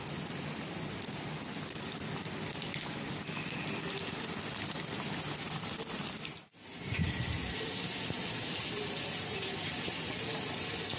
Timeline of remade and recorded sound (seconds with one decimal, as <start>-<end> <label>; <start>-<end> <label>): 0.0-11.0 recorded